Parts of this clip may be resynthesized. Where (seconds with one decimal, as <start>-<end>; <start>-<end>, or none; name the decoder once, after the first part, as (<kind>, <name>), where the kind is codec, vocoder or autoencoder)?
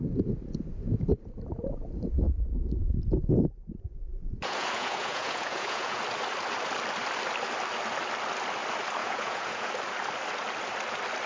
4.1-6.0 (vocoder, Vocos); 9.0-9.7